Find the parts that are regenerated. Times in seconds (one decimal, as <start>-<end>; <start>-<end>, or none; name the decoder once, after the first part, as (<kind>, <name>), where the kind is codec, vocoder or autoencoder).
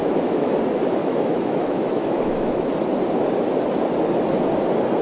0.0-0.5 (autoencoder, DAC-VAE); 1.0-2.7